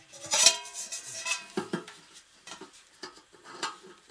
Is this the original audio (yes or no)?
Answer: no